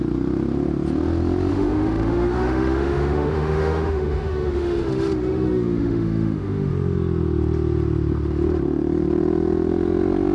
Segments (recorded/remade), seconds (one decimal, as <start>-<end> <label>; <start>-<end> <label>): 0.0-1.5 recorded; 1.5-6.7 remade; 6.7-10.3 recorded